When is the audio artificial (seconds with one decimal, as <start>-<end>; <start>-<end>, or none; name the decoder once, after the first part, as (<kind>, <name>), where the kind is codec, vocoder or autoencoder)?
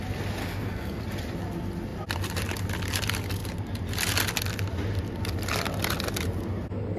0.4-1.0 (codec, SNAC)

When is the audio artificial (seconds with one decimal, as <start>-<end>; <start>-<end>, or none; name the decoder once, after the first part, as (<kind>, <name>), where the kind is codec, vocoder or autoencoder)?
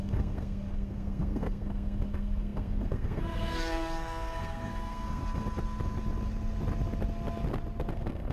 0.0-5.2 (codec, SNAC); 7.9-8.3